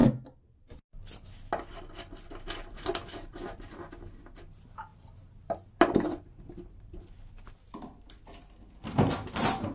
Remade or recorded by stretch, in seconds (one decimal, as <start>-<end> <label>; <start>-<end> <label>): 0.0-4.9 recorded; 4.9-8.3 remade; 8.3-9.7 recorded